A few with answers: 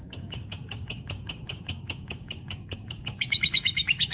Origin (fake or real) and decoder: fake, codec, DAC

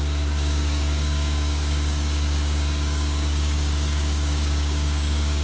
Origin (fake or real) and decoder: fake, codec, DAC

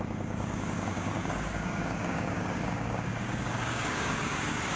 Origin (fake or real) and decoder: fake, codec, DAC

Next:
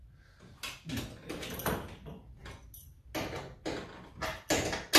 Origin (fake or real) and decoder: real